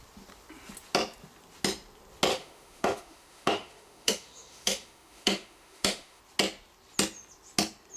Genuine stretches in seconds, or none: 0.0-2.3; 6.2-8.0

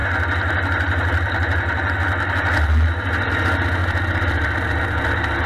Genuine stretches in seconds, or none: 0.0-5.5

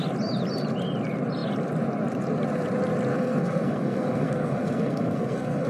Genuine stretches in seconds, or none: 0.0-3.1

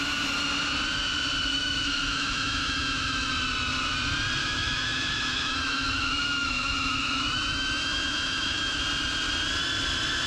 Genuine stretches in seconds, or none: 0.0-1.5; 3.3-4.4; 8.8-10.3

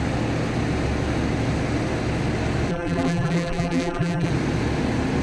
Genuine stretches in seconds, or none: 0.0-2.7; 4.3-5.2

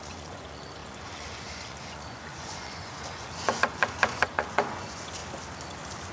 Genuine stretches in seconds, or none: 5.2-6.1

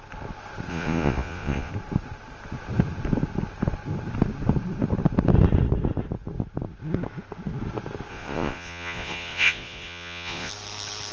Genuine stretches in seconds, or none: 0.0-0.7; 1.7-8.1; 10.5-11.1